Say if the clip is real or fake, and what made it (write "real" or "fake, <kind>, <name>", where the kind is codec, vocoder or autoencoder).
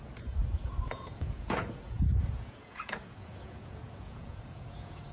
fake, vocoder, Vocos